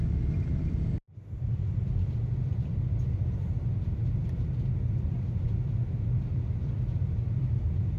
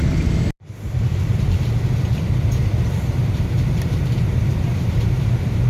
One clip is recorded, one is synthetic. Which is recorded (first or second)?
first